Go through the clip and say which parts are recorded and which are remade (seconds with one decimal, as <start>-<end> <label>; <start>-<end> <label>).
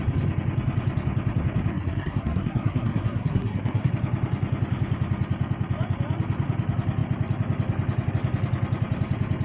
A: 0.0-1.7 recorded; 1.7-3.9 remade; 3.9-9.4 recorded